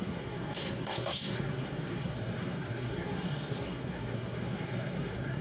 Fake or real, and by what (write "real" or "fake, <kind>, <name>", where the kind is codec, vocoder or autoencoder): fake, codec, SNAC